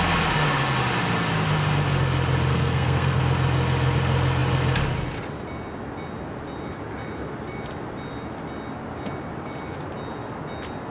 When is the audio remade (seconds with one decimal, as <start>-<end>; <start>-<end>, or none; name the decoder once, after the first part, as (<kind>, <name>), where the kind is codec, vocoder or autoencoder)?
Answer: 2.5-3.2 (codec, SNAC)